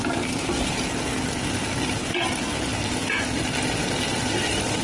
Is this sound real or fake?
real